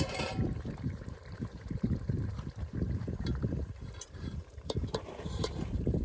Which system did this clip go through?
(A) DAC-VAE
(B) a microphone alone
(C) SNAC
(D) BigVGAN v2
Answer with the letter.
D